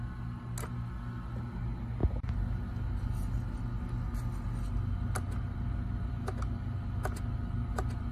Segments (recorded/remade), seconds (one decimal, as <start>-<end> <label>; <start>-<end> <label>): 0.0-8.1 recorded